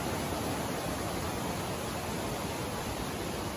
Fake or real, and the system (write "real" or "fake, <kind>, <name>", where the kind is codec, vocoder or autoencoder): real